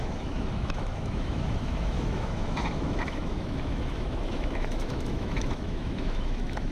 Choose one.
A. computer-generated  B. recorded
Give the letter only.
A